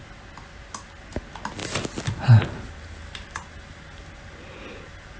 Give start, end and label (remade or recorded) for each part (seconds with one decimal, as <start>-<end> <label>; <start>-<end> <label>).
0.0-5.2 recorded